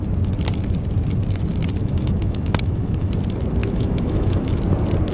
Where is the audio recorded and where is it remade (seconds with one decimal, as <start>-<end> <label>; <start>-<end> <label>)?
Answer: 0.0-1.8 recorded; 1.8-3.1 remade; 3.1-3.6 recorded; 3.6-4.6 remade; 4.6-5.1 recorded

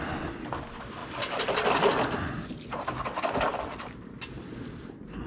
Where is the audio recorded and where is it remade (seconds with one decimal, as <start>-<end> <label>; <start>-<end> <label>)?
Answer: 0.0-5.3 recorded

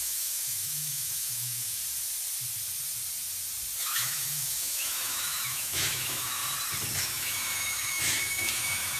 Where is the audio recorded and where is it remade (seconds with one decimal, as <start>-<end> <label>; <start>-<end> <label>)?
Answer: 0.0-1.8 remade; 1.8-3.8 recorded; 3.8-6.4 remade; 6.4-7.0 recorded; 7.0-9.0 remade